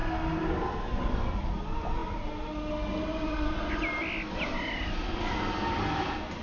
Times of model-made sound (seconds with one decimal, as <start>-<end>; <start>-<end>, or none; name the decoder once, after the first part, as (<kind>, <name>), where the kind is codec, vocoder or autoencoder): none